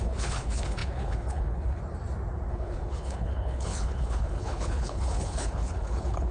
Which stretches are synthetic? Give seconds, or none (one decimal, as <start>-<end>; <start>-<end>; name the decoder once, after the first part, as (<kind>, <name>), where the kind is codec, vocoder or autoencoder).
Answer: 0.0-1.8 (codec, HILCodec); 2.5-6.3